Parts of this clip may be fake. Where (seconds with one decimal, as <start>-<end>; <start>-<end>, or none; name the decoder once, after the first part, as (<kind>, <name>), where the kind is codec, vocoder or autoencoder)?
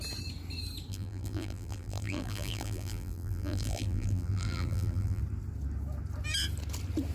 0.9-5.2 (vocoder, BigVGAN v2)